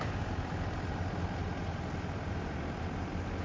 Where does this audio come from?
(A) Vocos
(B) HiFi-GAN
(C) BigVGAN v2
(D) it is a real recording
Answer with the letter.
C